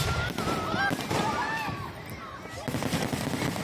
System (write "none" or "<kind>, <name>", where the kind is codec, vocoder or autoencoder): none